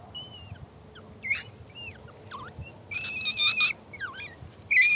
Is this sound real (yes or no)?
yes